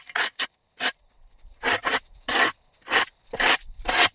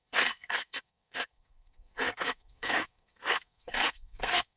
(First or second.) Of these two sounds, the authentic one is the first